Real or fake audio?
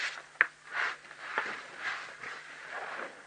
real